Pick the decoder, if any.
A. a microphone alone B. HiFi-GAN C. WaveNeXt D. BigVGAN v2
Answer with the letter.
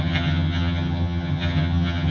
B